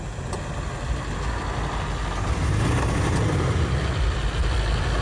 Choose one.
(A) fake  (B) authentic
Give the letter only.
B